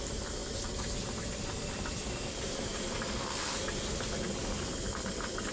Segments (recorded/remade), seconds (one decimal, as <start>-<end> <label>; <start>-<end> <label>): 0.0-5.5 recorded